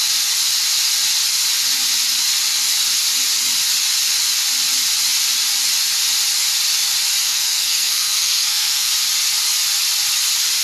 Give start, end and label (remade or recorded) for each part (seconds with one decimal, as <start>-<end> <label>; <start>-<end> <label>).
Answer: 0.0-7.2 recorded; 7.2-8.9 remade; 8.9-10.6 recorded